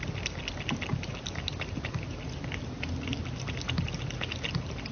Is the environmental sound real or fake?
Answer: real